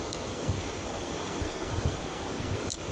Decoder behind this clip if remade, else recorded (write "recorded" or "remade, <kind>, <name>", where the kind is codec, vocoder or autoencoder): remade, codec, SNAC